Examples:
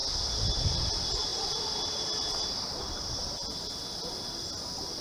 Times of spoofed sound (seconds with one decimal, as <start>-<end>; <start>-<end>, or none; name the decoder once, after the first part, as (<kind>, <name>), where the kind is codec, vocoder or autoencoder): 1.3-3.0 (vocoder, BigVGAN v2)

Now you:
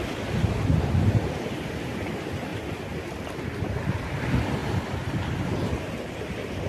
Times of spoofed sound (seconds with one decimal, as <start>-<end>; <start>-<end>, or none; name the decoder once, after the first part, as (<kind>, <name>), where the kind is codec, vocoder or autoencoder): 4.6-6.7 (vocoder, BigVGAN v2)

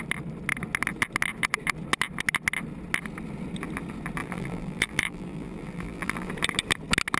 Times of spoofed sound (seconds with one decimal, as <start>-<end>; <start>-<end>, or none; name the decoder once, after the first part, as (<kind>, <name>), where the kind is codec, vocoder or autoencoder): 4.2-6.3 (vocoder, BigVGAN v2)

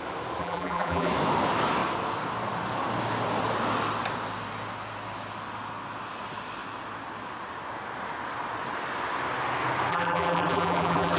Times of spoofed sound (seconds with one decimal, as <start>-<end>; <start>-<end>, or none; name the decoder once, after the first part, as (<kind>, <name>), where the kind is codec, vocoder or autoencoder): 0.4-1.1 (vocoder, BigVGAN v2); 9.9-11.2

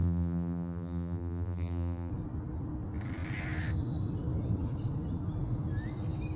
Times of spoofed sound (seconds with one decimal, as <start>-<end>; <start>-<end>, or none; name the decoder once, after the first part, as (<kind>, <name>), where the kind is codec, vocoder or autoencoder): 0.0-2.1 (vocoder, BigVGAN v2)